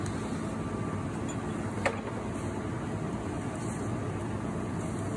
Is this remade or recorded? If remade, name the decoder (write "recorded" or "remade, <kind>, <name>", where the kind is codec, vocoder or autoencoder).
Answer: recorded